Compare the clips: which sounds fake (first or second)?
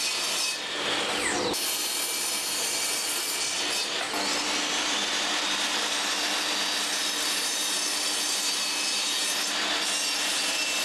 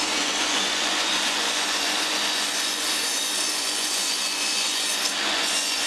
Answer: second